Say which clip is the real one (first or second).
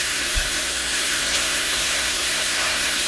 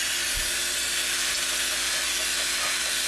second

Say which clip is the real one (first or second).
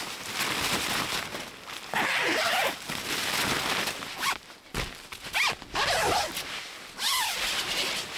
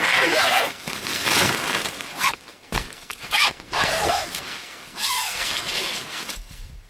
first